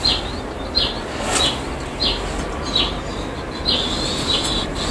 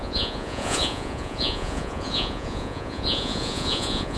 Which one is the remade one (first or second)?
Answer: second